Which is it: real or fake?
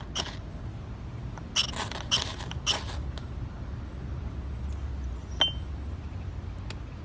real